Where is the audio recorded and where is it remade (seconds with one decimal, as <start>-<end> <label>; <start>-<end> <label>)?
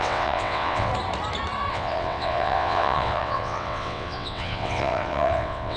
0.0-0.9 remade; 0.9-1.7 recorded; 1.7-5.8 remade